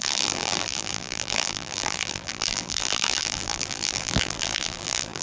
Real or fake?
fake